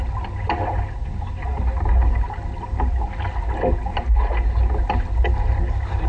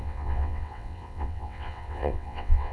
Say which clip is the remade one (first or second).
second